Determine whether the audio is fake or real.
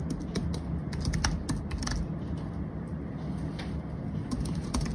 real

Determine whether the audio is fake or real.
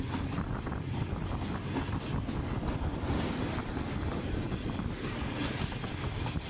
real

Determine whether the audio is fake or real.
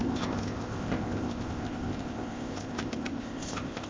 fake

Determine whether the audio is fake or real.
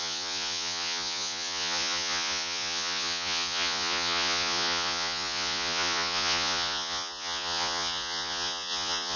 fake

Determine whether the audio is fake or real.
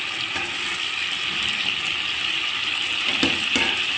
real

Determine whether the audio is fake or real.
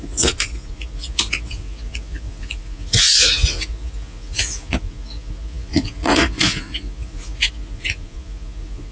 fake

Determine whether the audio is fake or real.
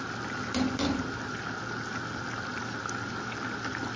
real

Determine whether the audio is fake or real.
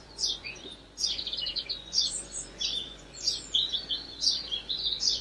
fake